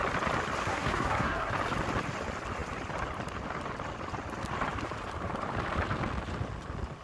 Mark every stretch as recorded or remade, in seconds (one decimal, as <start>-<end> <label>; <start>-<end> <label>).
0.0-0.6 recorded; 0.6-1.5 remade; 1.5-7.0 recorded